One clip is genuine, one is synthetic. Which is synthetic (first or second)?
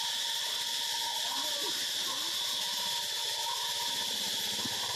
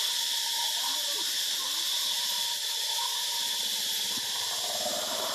second